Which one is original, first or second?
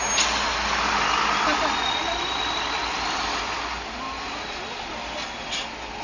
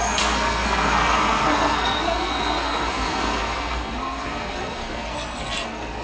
first